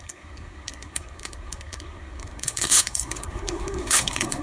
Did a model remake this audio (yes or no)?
yes